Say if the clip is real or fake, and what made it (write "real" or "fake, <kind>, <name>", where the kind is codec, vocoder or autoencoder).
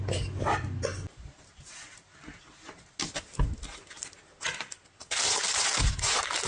real